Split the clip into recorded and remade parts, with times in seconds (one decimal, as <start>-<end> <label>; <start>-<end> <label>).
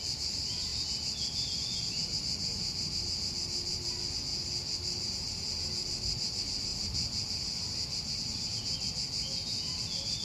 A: 0.0-10.2 recorded